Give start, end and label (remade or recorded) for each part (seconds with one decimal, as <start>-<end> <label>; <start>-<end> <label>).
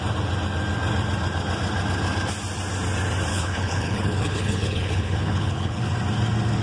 0.0-3.3 recorded; 3.3-5.8 remade; 5.8-6.6 recorded